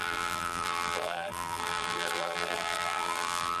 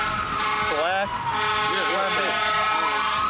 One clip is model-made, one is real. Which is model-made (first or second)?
first